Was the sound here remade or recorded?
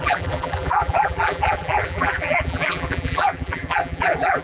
remade